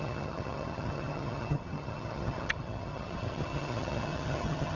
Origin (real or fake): fake